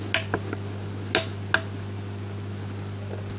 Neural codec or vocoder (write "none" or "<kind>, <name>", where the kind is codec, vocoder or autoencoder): none